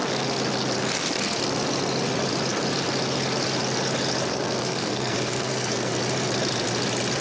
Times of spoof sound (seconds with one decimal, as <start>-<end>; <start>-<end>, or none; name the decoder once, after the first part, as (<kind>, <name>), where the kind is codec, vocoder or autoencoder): 4.3-5.9 (codec, SNAC)